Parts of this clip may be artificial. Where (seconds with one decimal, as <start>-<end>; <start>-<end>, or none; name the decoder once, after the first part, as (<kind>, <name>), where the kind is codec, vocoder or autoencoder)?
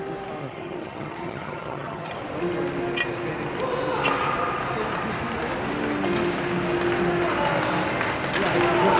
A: 0.4-2.1 (vocoder, HiFi-GAN)